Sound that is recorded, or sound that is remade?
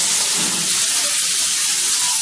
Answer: recorded